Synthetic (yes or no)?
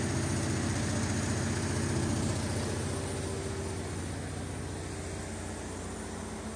no